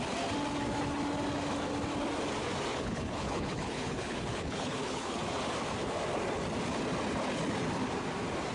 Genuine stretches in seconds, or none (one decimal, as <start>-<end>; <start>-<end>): 0.0-2.7; 5.2-8.5